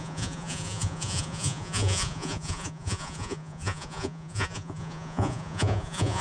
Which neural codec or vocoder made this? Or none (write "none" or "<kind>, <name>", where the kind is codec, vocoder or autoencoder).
vocoder, Vocos